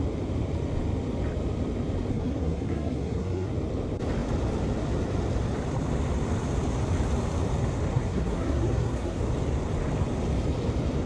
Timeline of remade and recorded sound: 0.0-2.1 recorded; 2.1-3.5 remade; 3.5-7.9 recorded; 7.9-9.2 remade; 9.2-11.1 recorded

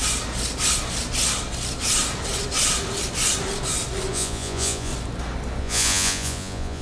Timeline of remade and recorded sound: 0.0-4.1 recorded; 4.1-4.9 remade; 4.9-5.6 recorded; 5.6-6.8 remade

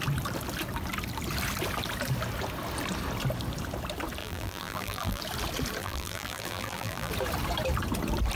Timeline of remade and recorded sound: 0.0-4.2 recorded; 4.2-5.2 remade; 5.2-5.8 recorded; 5.8-7.1 remade; 7.1-8.4 recorded

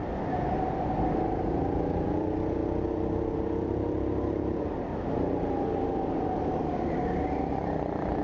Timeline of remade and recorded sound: 0.0-2.6 remade; 2.6-3.2 recorded; 3.2-4.9 remade; 4.9-6.4 recorded; 6.4-8.2 remade

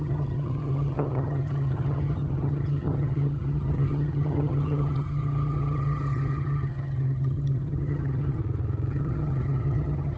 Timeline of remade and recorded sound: 0.0-8.4 remade; 8.4-8.9 recorded; 8.9-10.2 remade

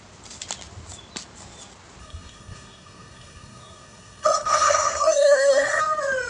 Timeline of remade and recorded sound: 0.0-2.0 recorded; 2.0-5.8 remade; 5.8-6.3 recorded

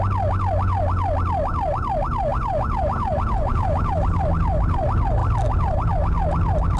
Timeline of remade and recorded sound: 0.0-2.3 recorded; 2.3-3.9 remade; 3.9-6.8 recorded

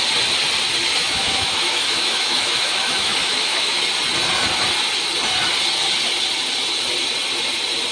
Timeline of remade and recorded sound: 0.0-1.0 recorded; 1.0-3.8 remade; 3.8-7.9 recorded